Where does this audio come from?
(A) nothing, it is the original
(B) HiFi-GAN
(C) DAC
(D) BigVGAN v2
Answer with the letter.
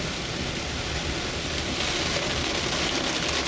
A